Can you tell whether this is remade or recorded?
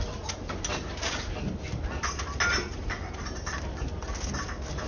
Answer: recorded